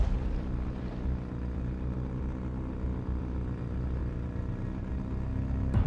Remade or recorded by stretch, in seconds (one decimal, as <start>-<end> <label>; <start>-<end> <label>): 0.0-5.9 recorded